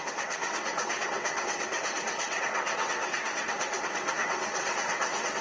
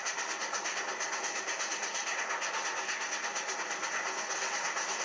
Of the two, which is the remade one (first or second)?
first